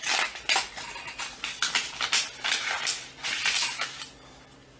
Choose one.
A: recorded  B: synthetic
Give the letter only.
A